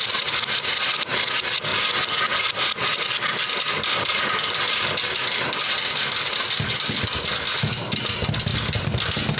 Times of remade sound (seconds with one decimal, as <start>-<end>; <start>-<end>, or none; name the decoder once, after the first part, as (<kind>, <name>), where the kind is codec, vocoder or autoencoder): none